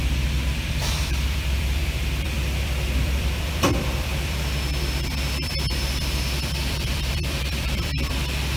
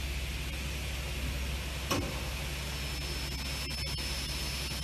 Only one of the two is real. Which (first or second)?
second